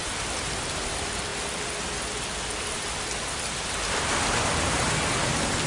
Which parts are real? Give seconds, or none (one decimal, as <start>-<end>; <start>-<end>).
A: 0.0-5.7